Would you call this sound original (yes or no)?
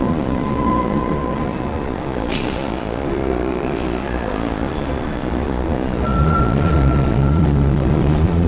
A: no